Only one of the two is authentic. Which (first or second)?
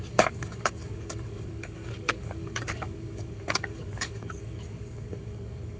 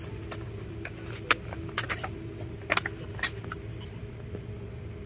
second